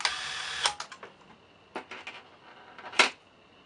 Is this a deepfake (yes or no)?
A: no